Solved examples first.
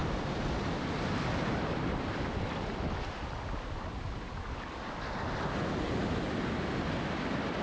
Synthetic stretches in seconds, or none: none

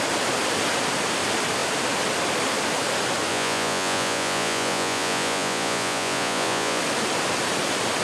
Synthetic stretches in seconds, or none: 3.3-6.8 (vocoder, Vocos)

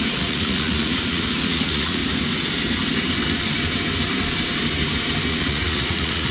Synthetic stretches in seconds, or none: 0.0-2.0 (vocoder, Vocos); 5.3-6.3